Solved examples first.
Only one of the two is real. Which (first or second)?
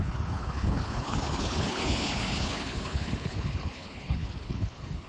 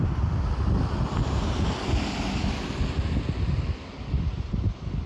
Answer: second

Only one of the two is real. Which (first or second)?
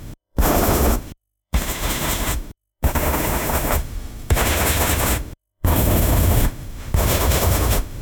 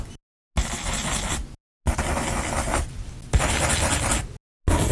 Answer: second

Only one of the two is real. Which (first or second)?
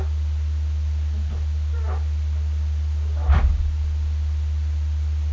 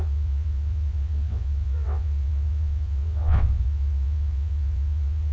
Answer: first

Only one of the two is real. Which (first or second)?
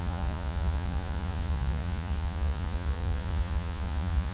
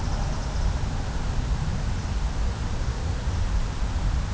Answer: second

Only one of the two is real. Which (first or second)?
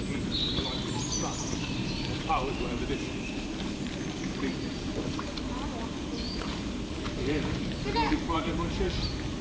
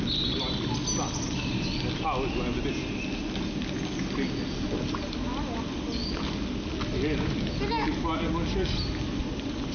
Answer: second